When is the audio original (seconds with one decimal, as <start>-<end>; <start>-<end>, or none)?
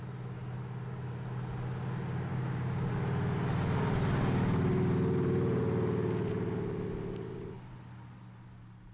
0.0-2.3; 2.9-8.9